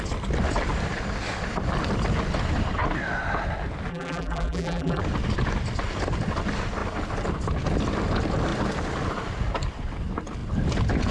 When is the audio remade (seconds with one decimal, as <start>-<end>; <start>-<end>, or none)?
3.9-5.0

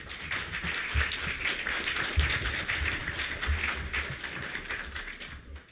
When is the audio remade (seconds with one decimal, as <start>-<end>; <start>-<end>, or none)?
none